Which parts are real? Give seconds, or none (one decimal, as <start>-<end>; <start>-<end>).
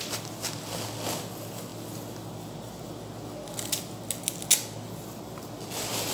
0.0-6.1